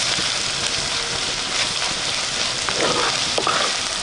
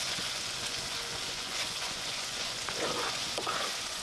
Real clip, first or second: first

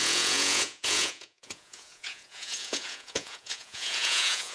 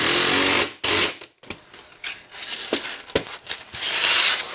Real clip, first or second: second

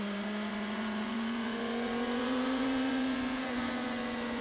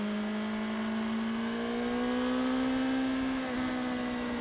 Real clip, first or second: second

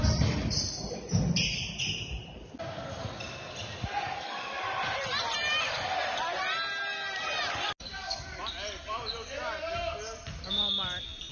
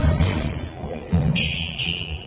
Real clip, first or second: first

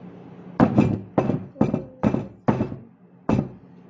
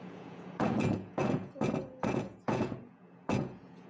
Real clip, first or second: first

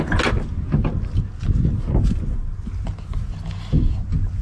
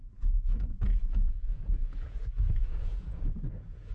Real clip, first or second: first